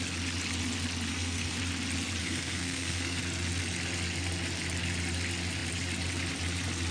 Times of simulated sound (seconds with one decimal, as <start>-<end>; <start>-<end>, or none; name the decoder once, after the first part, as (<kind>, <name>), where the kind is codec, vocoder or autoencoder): 1.1-1.6 (codec, SNAC); 2.2-3.2